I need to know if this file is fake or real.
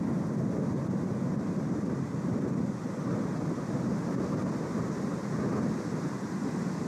real